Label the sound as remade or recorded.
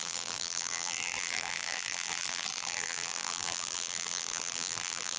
remade